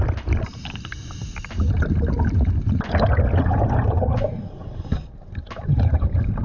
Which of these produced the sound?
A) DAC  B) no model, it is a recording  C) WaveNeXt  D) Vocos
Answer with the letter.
B